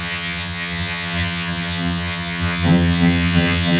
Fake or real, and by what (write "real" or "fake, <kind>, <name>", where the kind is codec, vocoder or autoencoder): fake, vocoder, HiFi-GAN